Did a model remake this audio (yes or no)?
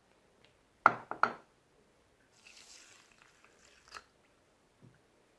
no